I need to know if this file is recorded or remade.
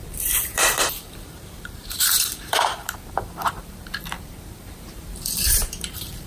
remade